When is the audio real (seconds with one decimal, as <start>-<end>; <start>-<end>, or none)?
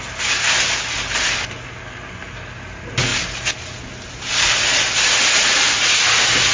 0.0-6.5